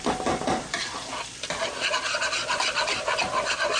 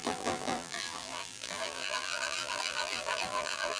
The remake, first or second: second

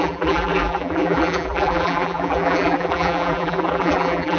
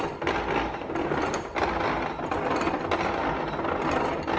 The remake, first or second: first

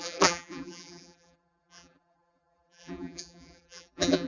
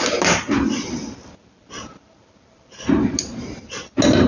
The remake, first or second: first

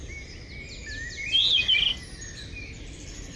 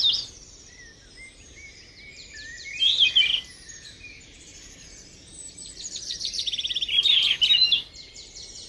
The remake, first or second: second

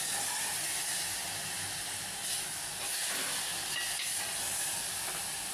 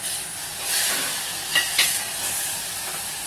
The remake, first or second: second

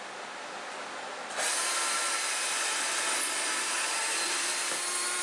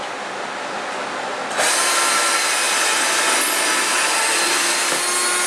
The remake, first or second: first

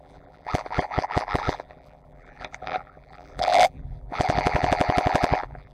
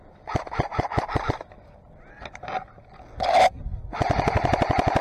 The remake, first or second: first